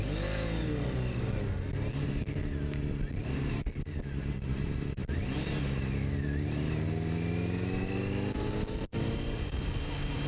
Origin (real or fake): real